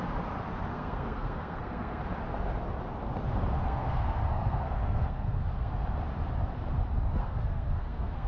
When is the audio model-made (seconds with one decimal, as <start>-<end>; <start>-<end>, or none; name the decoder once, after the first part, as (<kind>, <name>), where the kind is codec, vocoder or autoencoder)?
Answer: 0.7-2.0 (codec, SNAC); 3.6-5.7; 7.2-8.3